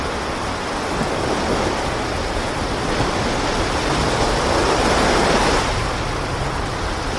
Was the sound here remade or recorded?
recorded